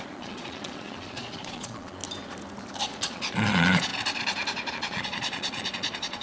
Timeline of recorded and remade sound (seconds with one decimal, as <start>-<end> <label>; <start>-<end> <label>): 0.0-2.0 remade; 2.0-2.8 recorded; 2.8-3.9 remade; 3.9-4.7 recorded; 4.7-6.2 remade

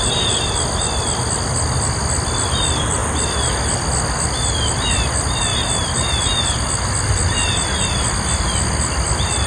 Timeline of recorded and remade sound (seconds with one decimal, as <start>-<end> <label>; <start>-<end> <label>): 0.0-9.5 recorded

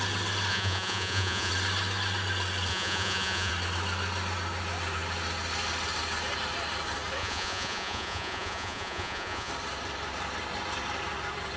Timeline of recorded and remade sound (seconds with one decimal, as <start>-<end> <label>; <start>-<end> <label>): 0.0-0.5 recorded; 0.5-1.5 remade; 1.5-2.7 recorded; 2.7-3.5 remade; 3.5-7.2 recorded; 7.2-9.5 remade; 9.5-11.6 recorded

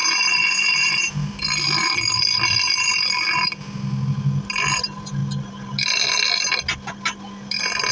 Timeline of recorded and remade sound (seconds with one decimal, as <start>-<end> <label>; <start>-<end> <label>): 0.0-7.9 recorded

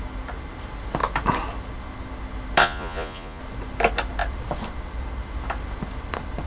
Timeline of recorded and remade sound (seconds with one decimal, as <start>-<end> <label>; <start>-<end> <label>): 0.0-2.6 recorded; 2.6-3.4 remade; 3.4-6.5 recorded